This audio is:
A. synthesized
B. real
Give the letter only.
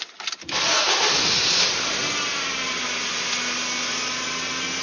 B